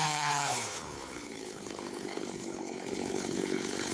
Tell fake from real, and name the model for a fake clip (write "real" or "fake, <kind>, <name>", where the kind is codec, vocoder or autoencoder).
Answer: fake, codec, HILCodec